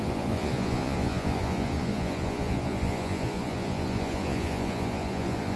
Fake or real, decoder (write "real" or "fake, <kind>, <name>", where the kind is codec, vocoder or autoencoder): fake, vocoder, Vocos